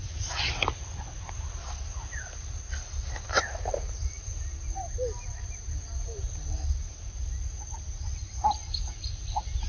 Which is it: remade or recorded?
recorded